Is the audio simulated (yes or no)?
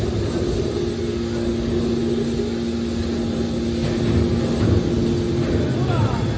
no